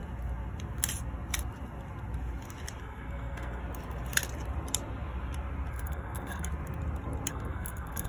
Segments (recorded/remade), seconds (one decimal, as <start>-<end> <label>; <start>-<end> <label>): 0.0-2.8 recorded; 2.8-3.6 remade; 3.6-5.7 recorded; 5.7-6.5 remade; 6.5-7.3 recorded; 7.3-8.1 remade